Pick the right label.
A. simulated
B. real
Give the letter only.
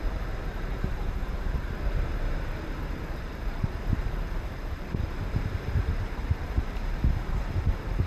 A